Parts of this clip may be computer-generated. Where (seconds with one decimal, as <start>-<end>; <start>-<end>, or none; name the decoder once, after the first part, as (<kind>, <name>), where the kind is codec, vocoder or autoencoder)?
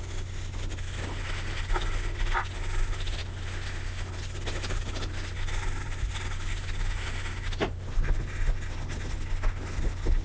none